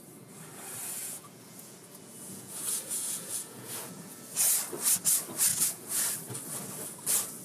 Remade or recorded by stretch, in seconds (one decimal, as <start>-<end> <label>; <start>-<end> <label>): 0.0-1.0 recorded; 1.0-4.4 remade; 4.4-5.5 recorded; 5.5-6.0 remade; 6.0-7.4 recorded